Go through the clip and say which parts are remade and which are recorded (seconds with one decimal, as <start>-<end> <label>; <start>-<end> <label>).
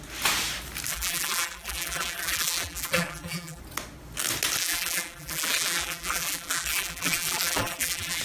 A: 0.0-0.9 recorded; 0.9-3.6 remade; 3.6-4.6 recorded; 4.6-8.2 remade